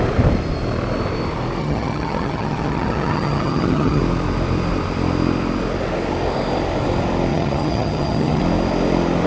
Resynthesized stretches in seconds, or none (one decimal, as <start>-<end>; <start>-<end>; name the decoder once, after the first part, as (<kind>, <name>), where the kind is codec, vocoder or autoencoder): 1.6-4.0 (vocoder, HiFi-GAN); 7.3-8.4